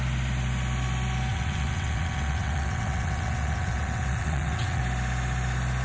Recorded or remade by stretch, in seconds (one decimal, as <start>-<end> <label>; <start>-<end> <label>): 0.0-1.3 recorded; 1.3-4.8 remade; 4.8-5.8 recorded

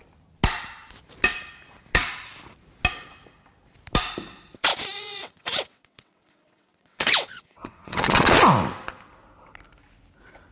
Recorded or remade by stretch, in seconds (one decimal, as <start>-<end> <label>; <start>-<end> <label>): 0.0-4.7 recorded; 4.7-8.4 remade; 8.4-10.5 recorded

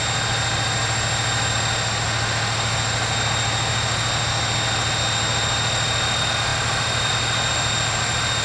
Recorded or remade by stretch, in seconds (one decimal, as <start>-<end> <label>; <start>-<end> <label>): 0.0-8.4 recorded

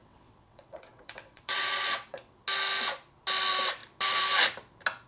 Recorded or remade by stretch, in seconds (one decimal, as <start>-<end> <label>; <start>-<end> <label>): 0.0-2.4 remade; 2.4-5.1 recorded

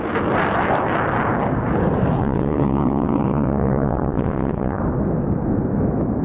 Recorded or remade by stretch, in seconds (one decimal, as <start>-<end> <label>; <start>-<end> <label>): 0.0-2.2 recorded; 2.2-4.8 remade; 4.8-6.2 recorded